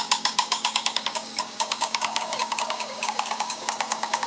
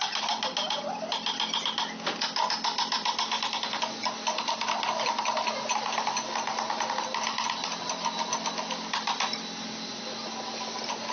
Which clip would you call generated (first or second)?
first